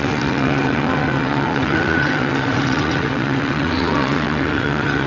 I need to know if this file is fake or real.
fake